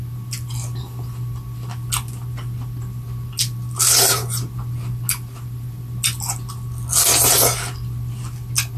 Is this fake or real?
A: real